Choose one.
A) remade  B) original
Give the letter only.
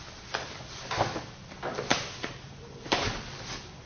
B